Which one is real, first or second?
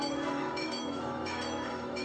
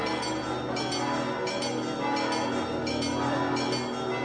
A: second